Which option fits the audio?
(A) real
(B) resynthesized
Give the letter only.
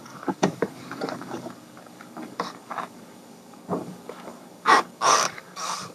B